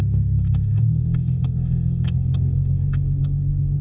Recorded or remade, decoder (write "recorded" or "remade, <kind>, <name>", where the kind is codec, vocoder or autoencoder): remade, codec, SNAC